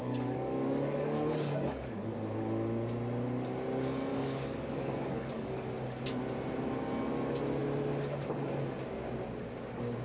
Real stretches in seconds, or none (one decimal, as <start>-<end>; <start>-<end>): 2.1-4.1; 5.7-10.0